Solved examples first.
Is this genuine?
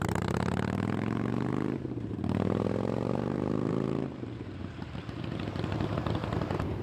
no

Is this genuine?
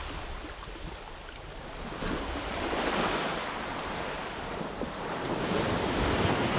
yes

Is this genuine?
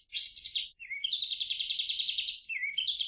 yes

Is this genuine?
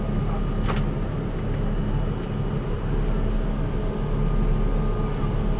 yes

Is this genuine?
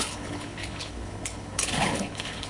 no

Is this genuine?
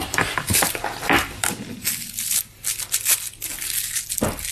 yes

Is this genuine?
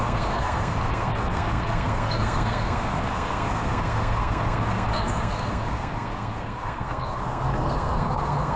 no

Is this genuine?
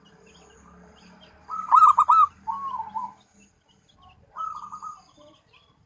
yes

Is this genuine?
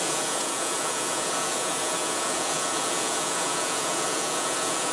no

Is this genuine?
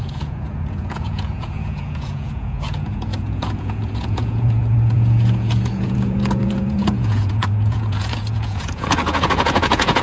no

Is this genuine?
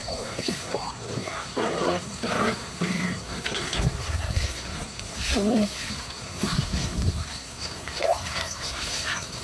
no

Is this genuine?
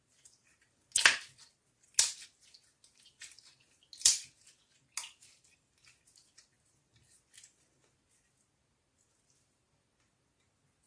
yes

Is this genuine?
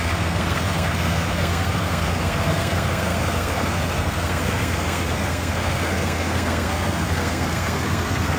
no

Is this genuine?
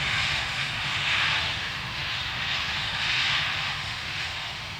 no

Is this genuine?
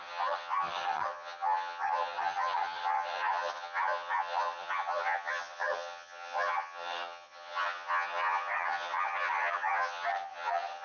no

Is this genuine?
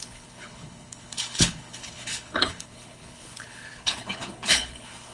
no